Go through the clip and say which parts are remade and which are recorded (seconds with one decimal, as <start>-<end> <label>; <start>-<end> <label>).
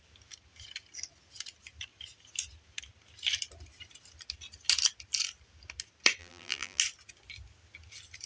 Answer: 0.0-6.2 recorded; 6.2-6.8 remade; 6.8-8.3 recorded